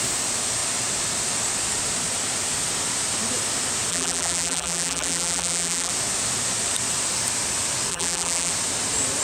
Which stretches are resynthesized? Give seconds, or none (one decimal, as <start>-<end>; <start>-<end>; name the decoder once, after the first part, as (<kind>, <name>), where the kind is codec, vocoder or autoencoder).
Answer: 3.9-5.9 (vocoder, BigVGAN v2); 7.9-8.5